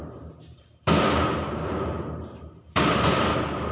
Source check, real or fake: fake